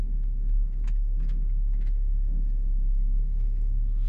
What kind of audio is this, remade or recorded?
remade